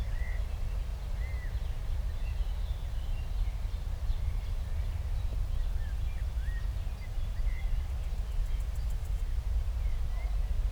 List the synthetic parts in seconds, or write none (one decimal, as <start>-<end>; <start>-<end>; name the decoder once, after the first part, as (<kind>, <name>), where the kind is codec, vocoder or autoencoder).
none